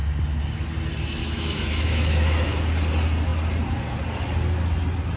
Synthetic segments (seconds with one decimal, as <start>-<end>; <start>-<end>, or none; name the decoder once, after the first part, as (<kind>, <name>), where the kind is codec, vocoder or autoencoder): 1.2-2.6 (autoencoder, DAC-VAE)